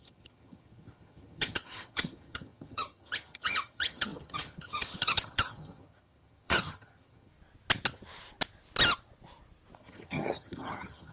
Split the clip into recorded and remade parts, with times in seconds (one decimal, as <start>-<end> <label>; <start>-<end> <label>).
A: 0.0-7.3 remade; 7.3-9.8 recorded; 9.8-11.1 remade

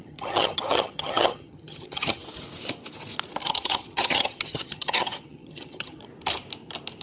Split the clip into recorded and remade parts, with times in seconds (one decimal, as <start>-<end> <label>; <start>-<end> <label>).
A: 0.0-2.2 remade; 2.2-3.4 recorded; 3.4-6.1 remade; 6.1-7.0 recorded